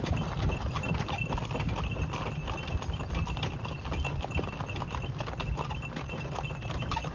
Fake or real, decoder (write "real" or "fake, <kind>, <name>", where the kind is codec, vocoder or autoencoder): real